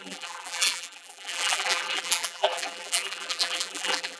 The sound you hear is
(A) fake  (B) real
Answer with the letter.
A